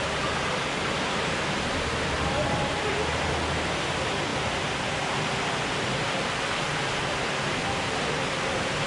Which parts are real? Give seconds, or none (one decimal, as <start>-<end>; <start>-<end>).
0.0-8.9